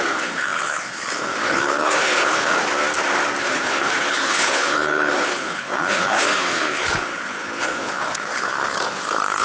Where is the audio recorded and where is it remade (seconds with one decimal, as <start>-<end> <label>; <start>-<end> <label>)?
0.0-2.5 remade; 2.5-3.4 recorded; 3.4-9.4 remade